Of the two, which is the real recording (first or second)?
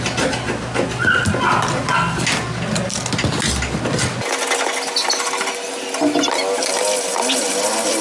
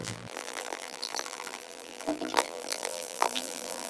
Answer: first